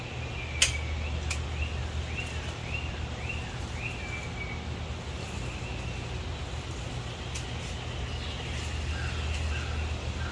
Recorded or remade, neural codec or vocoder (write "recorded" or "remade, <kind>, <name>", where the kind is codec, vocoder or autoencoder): recorded